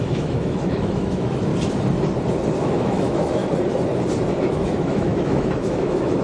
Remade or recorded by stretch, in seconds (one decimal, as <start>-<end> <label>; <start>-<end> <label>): 0.0-1.5 remade; 1.5-2.6 recorded; 2.6-3.4 remade; 3.4-4.4 recorded; 4.4-6.2 remade